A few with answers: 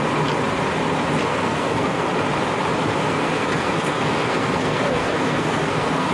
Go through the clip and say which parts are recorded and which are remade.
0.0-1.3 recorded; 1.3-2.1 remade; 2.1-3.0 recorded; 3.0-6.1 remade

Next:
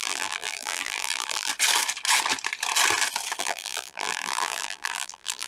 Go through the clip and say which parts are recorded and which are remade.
0.0-1.5 remade; 1.5-3.4 recorded; 3.4-5.5 remade

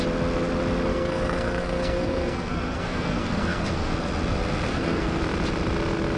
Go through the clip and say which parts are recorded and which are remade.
0.0-0.9 recorded; 0.9-3.9 remade; 3.9-4.7 recorded; 4.7-5.2 remade; 5.2-6.2 recorded

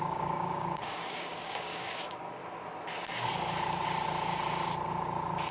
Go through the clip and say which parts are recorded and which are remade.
0.0-2.4 remade; 2.4-5.5 recorded